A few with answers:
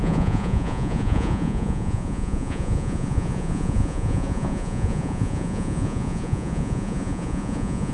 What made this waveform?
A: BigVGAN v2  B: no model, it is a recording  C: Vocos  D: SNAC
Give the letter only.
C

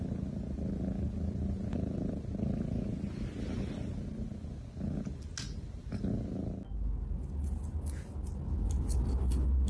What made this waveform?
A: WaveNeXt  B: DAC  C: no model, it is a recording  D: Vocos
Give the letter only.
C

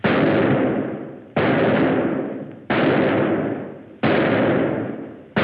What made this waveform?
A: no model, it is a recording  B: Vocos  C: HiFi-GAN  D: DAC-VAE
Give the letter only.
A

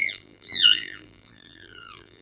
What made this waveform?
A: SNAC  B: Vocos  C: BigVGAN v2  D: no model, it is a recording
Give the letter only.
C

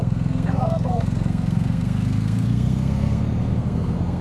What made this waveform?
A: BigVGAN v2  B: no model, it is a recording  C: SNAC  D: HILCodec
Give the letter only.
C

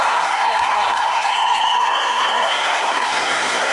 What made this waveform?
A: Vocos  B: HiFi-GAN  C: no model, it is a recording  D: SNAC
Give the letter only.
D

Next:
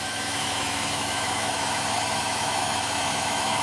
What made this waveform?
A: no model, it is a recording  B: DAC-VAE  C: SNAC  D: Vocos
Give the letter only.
B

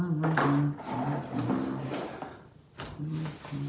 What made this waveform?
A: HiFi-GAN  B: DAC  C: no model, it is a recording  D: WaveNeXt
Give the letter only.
C